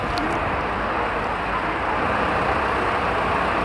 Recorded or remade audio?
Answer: recorded